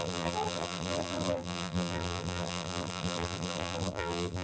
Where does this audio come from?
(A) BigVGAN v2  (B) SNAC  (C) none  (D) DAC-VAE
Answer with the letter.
A